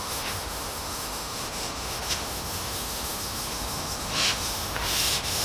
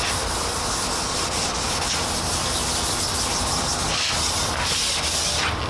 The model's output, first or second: first